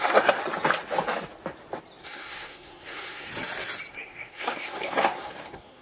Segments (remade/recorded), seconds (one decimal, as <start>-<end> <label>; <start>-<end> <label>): 0.0-0.4 remade; 0.4-2.0 recorded; 2.0-3.3 remade; 3.3-3.9 recorded; 3.9-5.8 remade